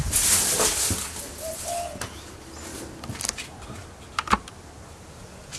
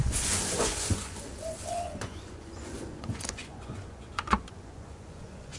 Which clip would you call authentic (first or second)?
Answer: first